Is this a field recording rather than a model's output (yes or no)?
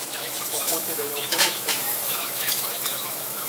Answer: no